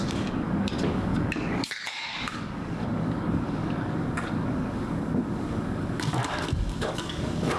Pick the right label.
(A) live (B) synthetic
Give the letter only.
B